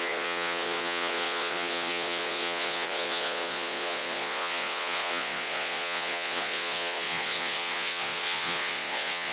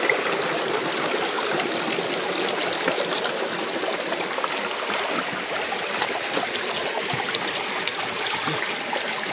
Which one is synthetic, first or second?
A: first